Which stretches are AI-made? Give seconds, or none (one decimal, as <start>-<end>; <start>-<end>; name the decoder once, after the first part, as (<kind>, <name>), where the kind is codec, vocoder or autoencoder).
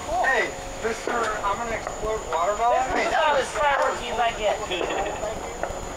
0.0-1.4 (autoencoder, DAC-VAE); 2.3-4.3